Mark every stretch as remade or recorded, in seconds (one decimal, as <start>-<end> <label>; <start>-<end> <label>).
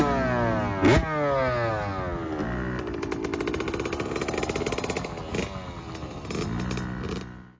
0.0-7.6 recorded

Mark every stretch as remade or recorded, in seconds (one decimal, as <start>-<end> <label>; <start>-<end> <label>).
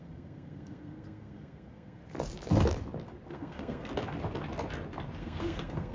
0.0-2.0 remade; 2.0-3.3 recorded; 3.3-3.9 remade; 3.9-5.2 recorded; 5.2-5.9 remade